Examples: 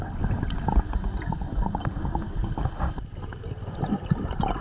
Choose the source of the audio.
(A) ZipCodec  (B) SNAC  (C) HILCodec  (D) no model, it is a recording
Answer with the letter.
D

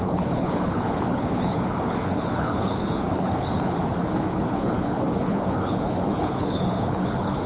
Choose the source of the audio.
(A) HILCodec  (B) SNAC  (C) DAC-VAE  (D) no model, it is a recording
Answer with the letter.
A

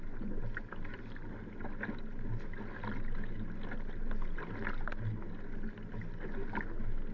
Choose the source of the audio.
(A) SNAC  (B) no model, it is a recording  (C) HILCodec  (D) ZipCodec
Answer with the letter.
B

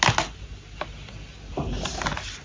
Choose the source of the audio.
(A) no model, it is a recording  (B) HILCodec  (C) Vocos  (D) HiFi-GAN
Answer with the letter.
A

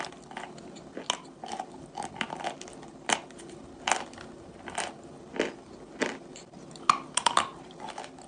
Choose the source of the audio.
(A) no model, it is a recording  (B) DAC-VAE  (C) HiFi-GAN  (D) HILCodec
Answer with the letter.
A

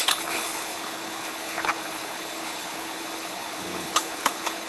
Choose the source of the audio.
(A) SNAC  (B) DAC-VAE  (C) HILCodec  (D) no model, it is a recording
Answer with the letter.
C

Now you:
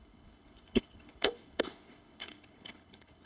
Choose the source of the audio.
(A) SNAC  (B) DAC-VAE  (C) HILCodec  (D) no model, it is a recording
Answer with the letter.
C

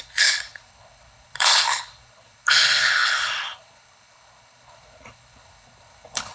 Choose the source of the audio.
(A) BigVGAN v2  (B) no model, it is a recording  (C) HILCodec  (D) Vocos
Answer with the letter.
C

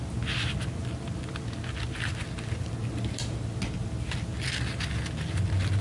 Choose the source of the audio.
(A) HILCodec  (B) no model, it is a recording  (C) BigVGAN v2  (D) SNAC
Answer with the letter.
B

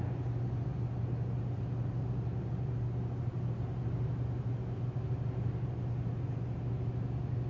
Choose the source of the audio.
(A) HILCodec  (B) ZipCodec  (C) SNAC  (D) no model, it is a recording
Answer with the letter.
D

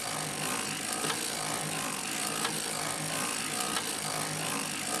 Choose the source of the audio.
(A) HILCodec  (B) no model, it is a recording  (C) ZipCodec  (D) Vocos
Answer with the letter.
B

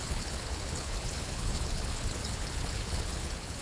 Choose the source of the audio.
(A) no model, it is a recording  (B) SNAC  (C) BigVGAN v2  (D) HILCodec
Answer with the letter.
D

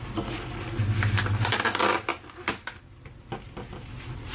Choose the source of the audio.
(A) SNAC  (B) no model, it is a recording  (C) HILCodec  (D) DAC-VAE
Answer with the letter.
B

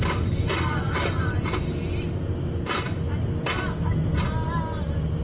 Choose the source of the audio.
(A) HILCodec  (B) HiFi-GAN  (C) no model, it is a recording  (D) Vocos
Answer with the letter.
C